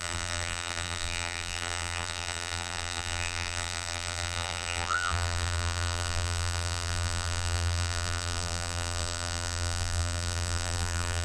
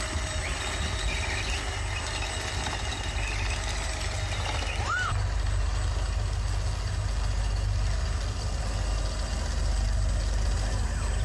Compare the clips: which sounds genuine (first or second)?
second